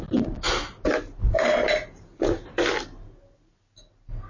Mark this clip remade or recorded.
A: recorded